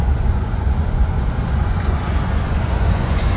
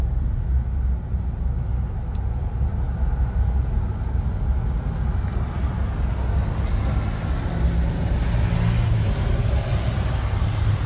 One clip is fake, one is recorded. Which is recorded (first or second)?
second